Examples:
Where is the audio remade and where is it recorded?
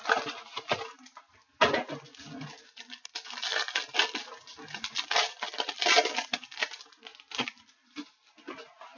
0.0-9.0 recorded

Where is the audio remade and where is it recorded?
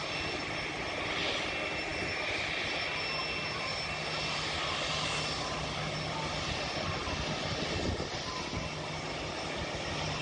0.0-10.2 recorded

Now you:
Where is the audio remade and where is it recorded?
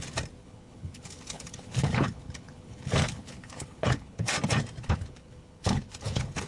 0.0-0.4 recorded; 0.4-4.3 remade; 4.3-4.8 recorded; 4.8-6.5 remade